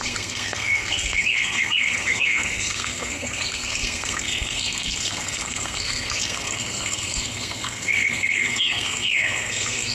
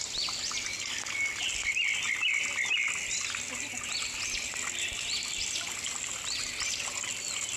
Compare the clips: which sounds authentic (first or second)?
second